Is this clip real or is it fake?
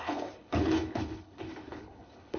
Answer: fake